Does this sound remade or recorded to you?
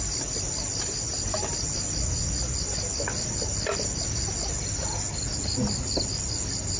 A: recorded